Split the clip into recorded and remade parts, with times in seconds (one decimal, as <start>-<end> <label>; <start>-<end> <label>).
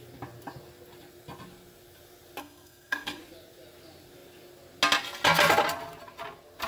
0.0-2.4 recorded; 2.4-3.2 remade; 3.2-6.7 recorded